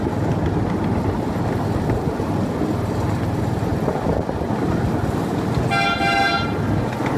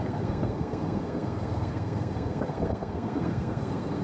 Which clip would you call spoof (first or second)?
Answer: second